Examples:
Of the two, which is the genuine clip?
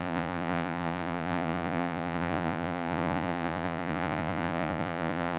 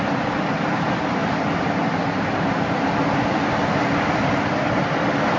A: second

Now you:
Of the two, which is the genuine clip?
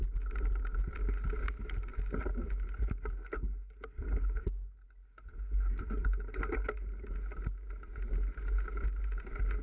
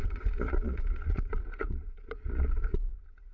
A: first